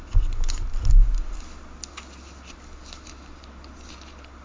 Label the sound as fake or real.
real